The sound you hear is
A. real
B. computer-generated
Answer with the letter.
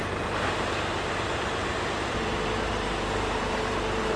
B